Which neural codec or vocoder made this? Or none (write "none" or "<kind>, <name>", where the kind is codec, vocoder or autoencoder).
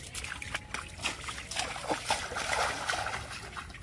none